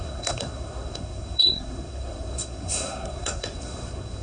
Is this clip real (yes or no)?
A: no